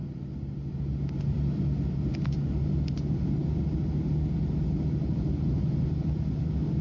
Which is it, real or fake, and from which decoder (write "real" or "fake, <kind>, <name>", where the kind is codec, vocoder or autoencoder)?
real